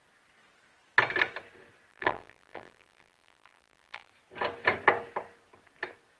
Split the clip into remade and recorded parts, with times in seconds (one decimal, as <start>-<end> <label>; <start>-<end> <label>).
0.0-1.9 recorded; 1.9-4.1 remade; 4.1-6.2 recorded

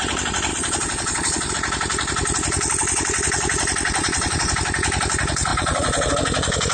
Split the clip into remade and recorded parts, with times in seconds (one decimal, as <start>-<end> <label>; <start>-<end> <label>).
0.0-0.5 recorded; 0.5-1.5 remade; 1.5-4.0 recorded; 4.0-4.5 remade; 4.5-5.5 recorded; 5.5-6.1 remade; 6.1-6.7 recorded